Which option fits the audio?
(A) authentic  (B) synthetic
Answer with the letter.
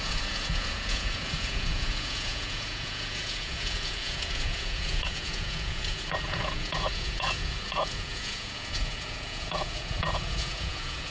B